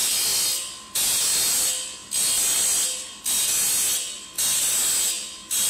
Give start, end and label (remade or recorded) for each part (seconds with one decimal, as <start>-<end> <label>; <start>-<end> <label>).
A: 0.0-5.7 recorded